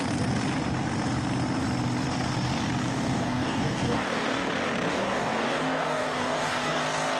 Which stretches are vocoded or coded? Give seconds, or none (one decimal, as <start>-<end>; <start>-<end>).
2.8-4.5; 4.9-6.8